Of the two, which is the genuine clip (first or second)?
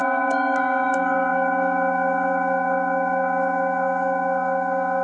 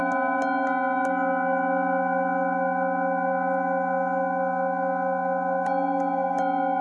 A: second